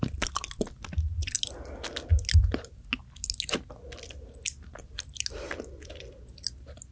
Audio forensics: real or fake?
real